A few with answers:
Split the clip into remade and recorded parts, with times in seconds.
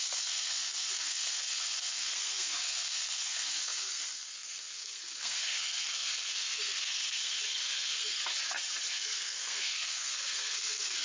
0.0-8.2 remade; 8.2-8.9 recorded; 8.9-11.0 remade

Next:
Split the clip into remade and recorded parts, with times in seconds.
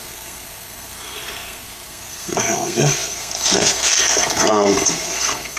0.0-5.6 remade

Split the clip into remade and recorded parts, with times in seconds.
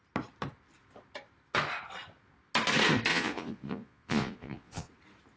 0.0-3.1 recorded; 3.1-4.9 remade; 4.9-5.4 recorded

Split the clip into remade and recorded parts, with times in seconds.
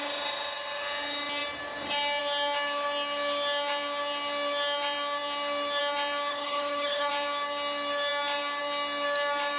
0.0-6.3 recorded; 6.3-7.1 remade; 7.1-9.6 recorded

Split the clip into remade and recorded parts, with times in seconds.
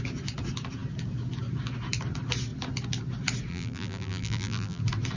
0.0-3.5 recorded; 3.5-4.8 remade; 4.8-5.2 recorded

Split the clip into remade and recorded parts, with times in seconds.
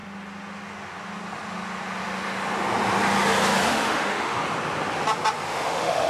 0.0-3.7 recorded; 3.7-4.4 remade; 4.4-5.5 recorded; 5.5-6.1 remade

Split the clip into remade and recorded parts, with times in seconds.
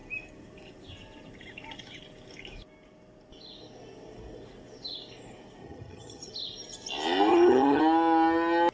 0.0-5.6 recorded; 5.6-6.3 remade; 6.3-7.3 recorded; 7.3-7.8 remade; 7.8-8.7 recorded